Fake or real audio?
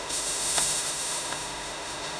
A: fake